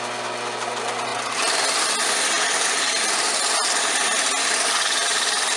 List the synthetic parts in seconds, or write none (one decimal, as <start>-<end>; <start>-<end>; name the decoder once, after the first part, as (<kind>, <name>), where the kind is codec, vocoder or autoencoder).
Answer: none